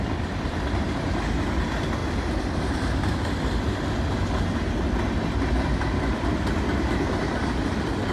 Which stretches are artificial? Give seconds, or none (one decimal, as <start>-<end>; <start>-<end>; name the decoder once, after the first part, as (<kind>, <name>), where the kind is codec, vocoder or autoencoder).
0.0-2.0 (vocoder, BigVGAN v2); 5.5-8.1